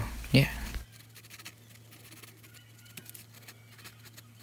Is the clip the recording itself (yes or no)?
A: yes